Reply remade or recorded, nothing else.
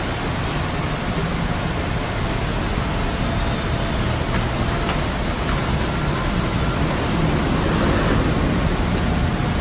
recorded